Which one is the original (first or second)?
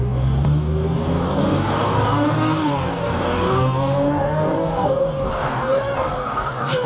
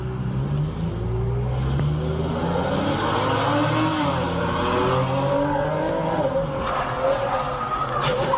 second